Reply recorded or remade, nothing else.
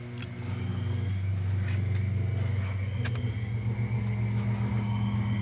recorded